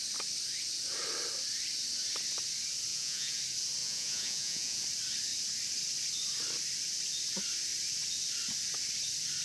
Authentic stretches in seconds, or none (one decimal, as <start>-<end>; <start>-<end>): 0.0-2.9; 3.4-3.8; 4.8-9.4